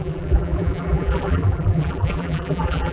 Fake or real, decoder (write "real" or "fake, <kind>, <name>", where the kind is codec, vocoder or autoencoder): fake, vocoder, BigVGAN v2